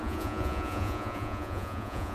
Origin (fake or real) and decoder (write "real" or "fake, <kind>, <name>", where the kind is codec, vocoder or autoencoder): fake, vocoder, Vocos